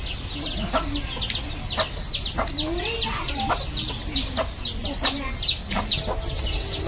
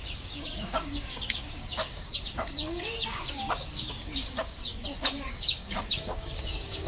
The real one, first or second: first